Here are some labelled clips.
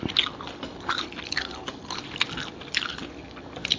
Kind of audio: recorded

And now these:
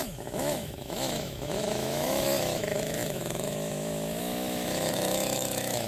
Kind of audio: remade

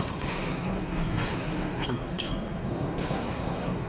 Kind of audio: remade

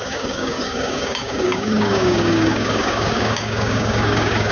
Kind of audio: remade